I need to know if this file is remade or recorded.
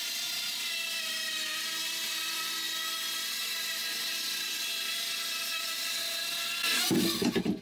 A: recorded